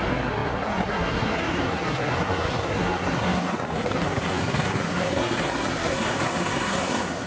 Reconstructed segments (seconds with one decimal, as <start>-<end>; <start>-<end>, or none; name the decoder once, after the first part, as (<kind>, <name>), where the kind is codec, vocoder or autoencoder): 0.0-7.3 (codec, SNAC)